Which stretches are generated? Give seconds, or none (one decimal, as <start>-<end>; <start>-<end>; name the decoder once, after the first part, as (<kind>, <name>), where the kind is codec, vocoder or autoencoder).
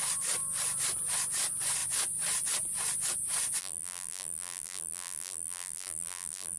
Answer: 3.6-6.6 (vocoder, BigVGAN v2)